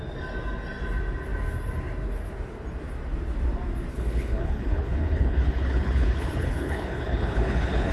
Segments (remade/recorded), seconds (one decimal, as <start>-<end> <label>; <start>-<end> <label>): 0.0-3.9 recorded; 3.9-7.9 remade